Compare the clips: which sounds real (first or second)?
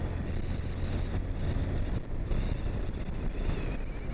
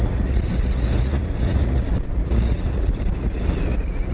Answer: first